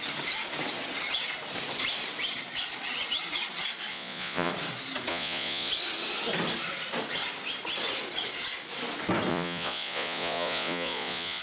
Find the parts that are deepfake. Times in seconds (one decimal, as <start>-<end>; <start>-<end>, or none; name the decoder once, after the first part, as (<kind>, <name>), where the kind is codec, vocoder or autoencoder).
3.9-4.5 (vocoder, Vocos); 5.1-5.7; 9.3-11.4

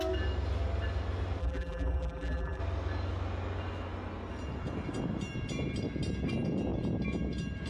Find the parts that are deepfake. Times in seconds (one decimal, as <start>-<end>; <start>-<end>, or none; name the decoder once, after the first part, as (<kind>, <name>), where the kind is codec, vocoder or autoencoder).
1.4-2.6 (vocoder, BigVGAN v2)

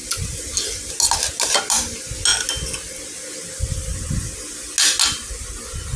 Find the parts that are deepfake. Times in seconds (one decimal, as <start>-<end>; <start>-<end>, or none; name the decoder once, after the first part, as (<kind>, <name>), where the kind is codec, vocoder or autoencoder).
none

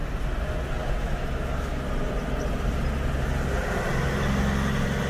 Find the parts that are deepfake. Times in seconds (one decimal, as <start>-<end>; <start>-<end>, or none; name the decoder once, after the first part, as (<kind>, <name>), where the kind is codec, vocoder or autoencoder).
1.0-1.7 (autoencoder, DAC-VAE)

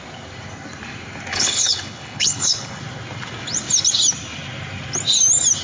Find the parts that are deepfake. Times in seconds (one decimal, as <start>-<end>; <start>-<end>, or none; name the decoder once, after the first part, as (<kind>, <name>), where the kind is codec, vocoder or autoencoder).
1.3-2.8 (codec, HILCodec)